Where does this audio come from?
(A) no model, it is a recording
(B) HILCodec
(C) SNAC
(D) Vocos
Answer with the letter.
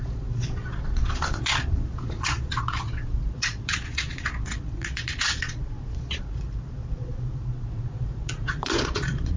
D